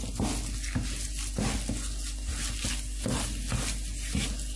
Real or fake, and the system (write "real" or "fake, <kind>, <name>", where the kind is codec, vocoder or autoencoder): real